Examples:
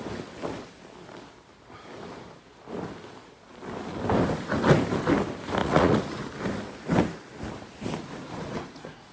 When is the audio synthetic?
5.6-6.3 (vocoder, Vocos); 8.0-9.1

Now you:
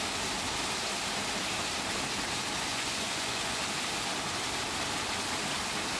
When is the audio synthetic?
2.7-3.6 (vocoder, Vocos)

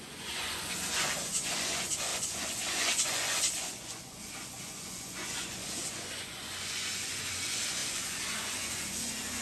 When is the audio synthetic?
0.0-9.4 (vocoder, Vocos)

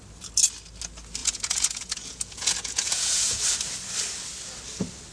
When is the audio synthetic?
1.2-3.4 (vocoder, Vocos)

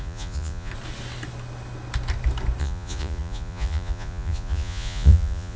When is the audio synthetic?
0.0-0.7 (vocoder, Vocos); 2.6-5.6